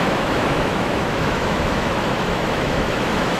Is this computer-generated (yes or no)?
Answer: yes